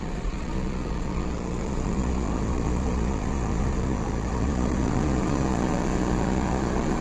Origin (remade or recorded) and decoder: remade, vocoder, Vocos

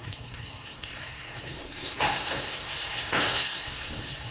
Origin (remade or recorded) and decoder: remade, codec, SNAC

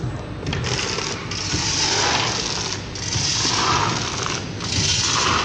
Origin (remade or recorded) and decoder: recorded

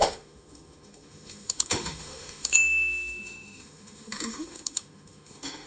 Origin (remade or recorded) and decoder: remade, autoencoder, DAC-VAE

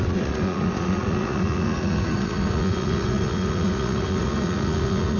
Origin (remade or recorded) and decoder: remade, vocoder, Vocos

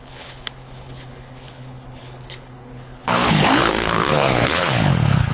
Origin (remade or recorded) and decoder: remade, codec, HILCodec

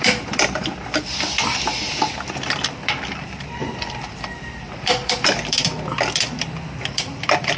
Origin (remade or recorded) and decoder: remade, vocoder, BigVGAN v2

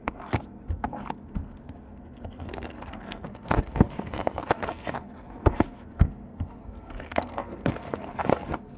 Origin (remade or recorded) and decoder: remade, codec, SNAC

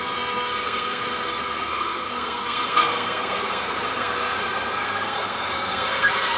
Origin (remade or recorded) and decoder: remade, codec, SNAC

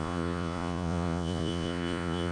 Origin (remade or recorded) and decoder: remade, vocoder, Vocos